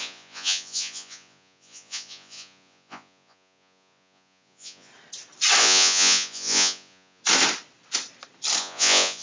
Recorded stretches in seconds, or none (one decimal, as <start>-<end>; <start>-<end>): 4.9-5.6; 7.2-8.6